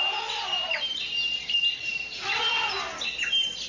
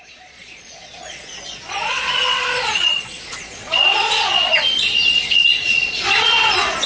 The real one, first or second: first